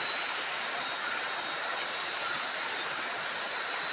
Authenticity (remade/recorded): recorded